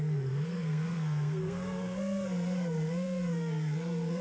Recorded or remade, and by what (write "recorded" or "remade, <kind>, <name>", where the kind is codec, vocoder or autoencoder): remade, codec, SNAC